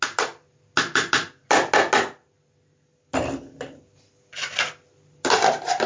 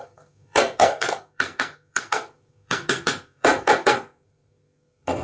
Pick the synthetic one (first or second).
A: second